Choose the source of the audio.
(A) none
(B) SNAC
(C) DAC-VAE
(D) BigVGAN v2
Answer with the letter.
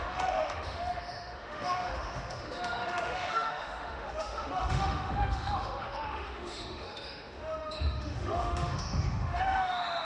C